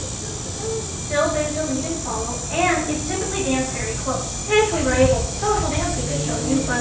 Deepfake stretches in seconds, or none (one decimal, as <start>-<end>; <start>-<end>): 4.4-6.8